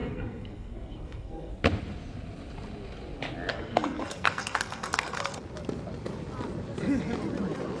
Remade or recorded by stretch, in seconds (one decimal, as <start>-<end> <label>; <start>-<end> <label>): 0.0-1.5 remade; 1.5-3.5 recorded; 3.5-5.4 remade; 5.4-7.8 recorded

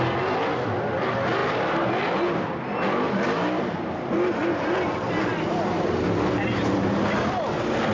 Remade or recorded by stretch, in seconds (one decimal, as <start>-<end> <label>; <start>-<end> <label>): 0.0-7.9 recorded

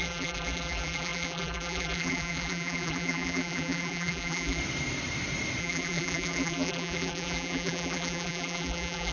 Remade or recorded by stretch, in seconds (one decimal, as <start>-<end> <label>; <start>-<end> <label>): 0.0-4.6 remade; 4.6-5.6 recorded; 5.6-9.1 remade